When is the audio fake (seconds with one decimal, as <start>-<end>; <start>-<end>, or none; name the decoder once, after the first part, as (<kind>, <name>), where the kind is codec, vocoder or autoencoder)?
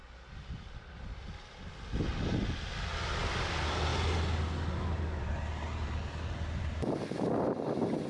none